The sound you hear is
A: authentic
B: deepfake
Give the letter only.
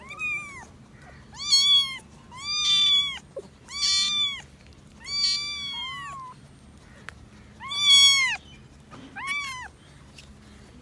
A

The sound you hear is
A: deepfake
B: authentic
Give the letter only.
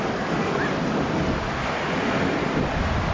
B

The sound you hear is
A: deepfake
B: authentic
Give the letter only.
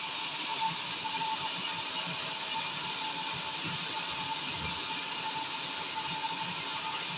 B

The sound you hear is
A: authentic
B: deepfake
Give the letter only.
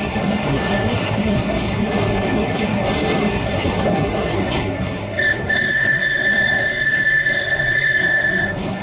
B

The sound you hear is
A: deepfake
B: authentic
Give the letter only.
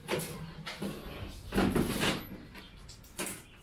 B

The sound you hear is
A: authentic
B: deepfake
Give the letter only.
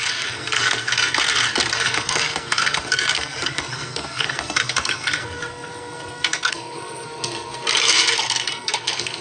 B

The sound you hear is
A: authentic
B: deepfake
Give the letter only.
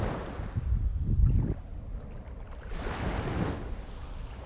A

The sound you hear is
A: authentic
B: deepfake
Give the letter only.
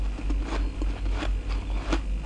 A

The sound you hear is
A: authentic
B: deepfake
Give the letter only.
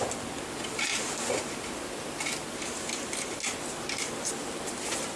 A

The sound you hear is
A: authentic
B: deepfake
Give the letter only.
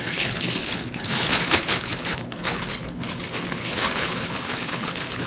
B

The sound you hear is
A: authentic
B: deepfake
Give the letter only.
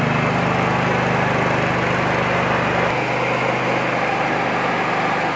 A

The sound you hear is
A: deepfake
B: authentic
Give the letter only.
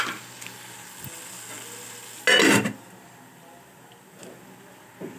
B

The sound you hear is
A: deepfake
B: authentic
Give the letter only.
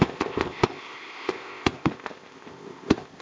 A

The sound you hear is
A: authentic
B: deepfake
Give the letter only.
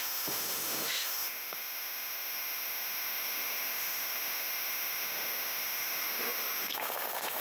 B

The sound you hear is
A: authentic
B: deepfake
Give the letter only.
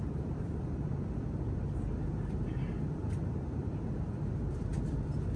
B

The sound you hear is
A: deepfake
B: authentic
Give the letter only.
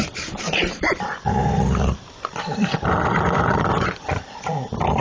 A